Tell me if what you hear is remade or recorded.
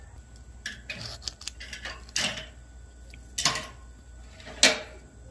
recorded